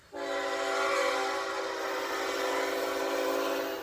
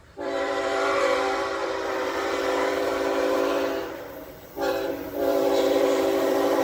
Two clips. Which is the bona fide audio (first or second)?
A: first